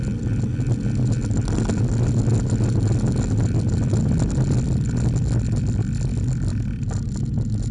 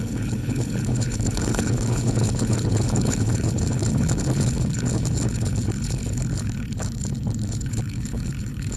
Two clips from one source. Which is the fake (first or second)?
second